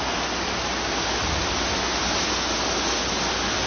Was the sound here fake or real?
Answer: real